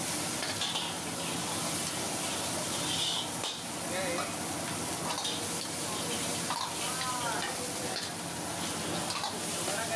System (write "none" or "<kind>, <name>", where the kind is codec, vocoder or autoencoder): none